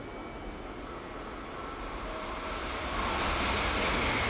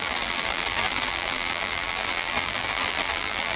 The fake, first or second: second